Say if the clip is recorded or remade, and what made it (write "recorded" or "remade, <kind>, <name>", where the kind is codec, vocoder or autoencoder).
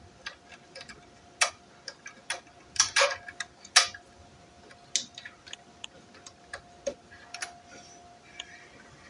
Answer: recorded